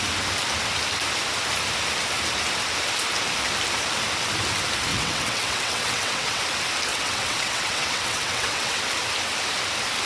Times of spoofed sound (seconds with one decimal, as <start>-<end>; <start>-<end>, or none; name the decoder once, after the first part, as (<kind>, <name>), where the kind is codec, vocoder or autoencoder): 4.9-6.4 (vocoder, WaveNeXt); 6.9-8.8